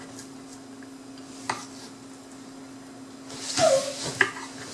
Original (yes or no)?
yes